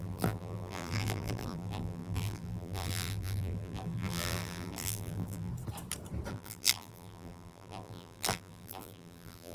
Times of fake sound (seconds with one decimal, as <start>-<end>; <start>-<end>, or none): 0.0-5.5; 6.3-9.5